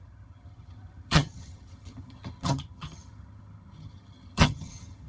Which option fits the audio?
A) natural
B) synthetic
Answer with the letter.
B